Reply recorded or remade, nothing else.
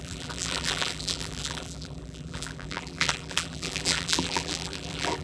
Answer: remade